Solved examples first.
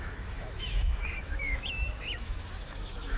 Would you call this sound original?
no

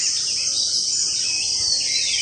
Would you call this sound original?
yes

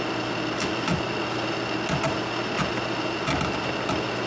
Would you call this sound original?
yes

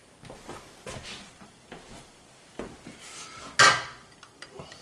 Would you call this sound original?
yes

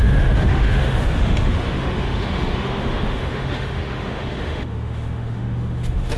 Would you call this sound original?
no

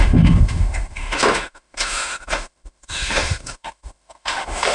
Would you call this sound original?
no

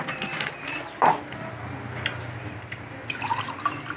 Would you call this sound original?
yes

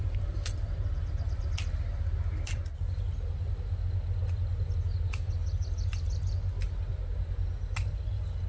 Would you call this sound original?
yes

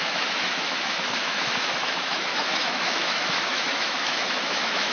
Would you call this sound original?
no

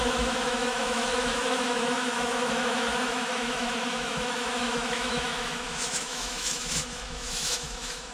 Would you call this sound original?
no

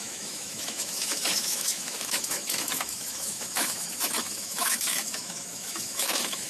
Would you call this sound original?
no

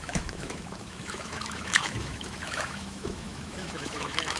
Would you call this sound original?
no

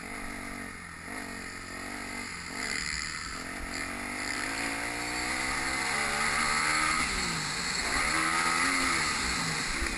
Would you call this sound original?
yes